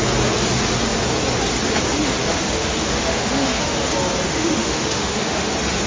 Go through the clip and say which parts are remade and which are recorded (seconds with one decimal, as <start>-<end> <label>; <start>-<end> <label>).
0.0-2.2 recorded; 2.2-3.9 remade; 3.9-4.3 recorded; 4.3-5.5 remade; 5.5-5.9 recorded